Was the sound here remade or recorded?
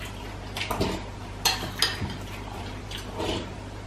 recorded